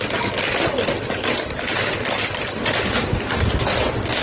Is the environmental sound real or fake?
real